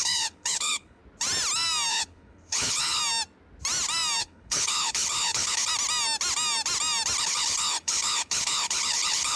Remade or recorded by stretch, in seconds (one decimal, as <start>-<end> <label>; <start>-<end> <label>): 0.0-1.0 remade; 1.0-1.9 recorded; 1.9-3.0 remade; 3.0-4.2 recorded; 4.2-5.7 remade; 5.7-7.2 recorded; 7.2-9.4 remade